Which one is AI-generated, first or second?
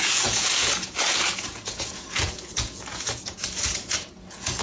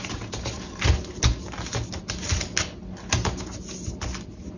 first